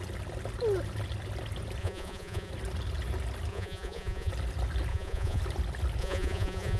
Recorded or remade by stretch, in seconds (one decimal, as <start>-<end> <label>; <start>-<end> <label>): 0.0-1.8 recorded; 1.8-2.5 remade; 2.5-3.5 recorded; 3.5-4.3 remade; 4.3-4.9 recorded; 4.9-5.4 remade; 5.4-6.0 recorded; 6.0-6.8 remade